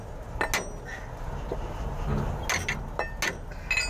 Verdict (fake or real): real